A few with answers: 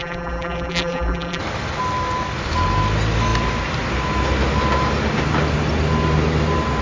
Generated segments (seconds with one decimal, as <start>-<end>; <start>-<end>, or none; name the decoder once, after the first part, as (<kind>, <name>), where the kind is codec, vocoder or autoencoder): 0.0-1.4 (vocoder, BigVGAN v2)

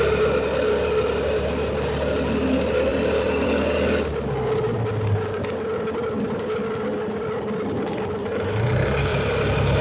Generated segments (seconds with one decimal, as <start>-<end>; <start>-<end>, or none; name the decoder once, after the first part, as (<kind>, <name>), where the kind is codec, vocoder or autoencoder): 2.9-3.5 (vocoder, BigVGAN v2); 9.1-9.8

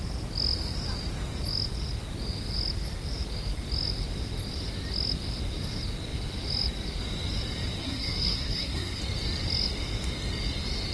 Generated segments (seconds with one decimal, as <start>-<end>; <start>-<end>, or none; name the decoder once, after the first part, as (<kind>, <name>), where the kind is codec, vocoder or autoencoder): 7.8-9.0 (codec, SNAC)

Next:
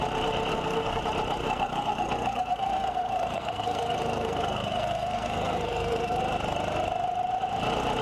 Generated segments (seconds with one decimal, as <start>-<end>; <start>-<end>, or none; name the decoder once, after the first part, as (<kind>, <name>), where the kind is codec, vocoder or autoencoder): 0.5-1.0 (codec, SNAC); 1.4-6.2

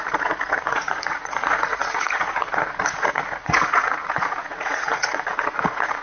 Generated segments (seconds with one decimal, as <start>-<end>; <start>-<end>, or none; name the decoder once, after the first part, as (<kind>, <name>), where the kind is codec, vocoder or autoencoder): 0.0-6.0 (vocoder, Vocos)

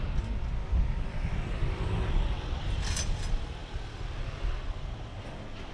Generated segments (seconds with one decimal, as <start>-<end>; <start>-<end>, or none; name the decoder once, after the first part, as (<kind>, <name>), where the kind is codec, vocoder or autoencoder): none

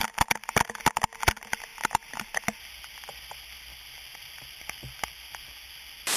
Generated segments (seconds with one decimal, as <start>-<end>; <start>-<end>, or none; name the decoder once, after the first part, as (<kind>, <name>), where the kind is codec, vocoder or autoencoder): none